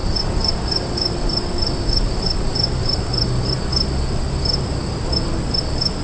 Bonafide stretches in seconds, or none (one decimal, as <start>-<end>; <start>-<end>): 3.6-6.0